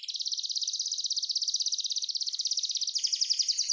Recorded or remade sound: recorded